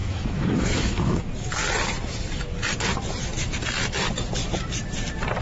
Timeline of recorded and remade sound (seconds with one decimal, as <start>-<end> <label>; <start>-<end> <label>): 0.0-1.3 remade; 1.3-5.4 recorded